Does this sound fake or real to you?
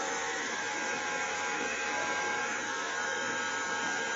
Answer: fake